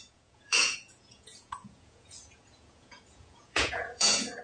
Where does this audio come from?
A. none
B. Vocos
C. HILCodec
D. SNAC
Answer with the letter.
B